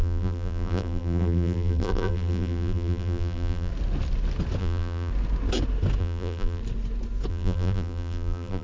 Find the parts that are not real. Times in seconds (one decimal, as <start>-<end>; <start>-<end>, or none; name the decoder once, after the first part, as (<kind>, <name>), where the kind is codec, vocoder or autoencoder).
0.0-3.7 (vocoder, BigVGAN v2); 4.6-5.1; 6.0-6.6; 7.3-8.6